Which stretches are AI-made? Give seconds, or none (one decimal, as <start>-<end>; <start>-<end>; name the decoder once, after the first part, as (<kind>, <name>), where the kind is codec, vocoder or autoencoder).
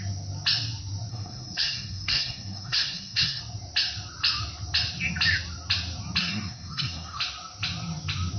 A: 1.1-3.4 (codec, SNAC); 6.2-7.2